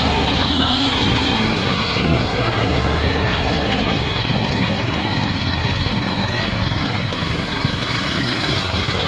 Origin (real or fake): fake